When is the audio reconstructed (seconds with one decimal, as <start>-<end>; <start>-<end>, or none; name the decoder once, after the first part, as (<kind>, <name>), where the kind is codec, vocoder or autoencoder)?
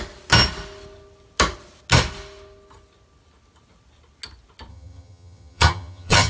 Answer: 4.7-6.3 (vocoder, HiFi-GAN)